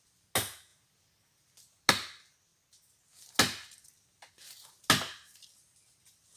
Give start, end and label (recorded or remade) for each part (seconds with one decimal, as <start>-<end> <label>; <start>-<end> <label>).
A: 0.0-6.4 recorded